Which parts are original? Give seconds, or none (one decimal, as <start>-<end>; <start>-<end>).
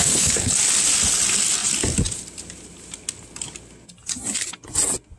0.5-5.2